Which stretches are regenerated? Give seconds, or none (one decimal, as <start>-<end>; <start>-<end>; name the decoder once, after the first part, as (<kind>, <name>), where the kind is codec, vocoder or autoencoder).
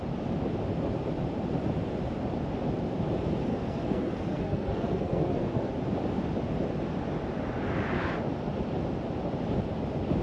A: 3.5-5.7 (codec, SNAC)